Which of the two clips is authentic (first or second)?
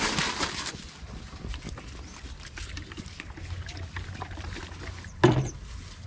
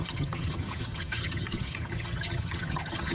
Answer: first